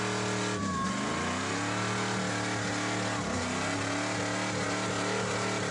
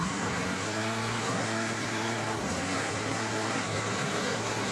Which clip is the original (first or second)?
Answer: first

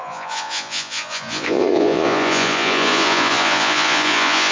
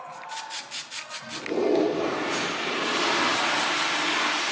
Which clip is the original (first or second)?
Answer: second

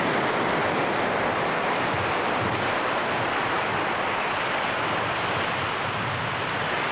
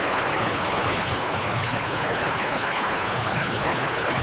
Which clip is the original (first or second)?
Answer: first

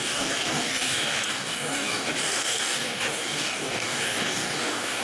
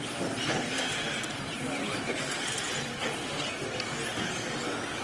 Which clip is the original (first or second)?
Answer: second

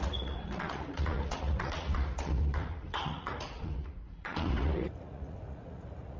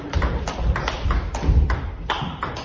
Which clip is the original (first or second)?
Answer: second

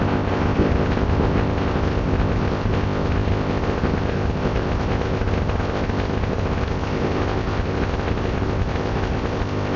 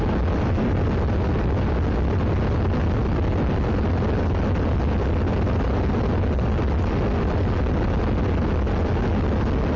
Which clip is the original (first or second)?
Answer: second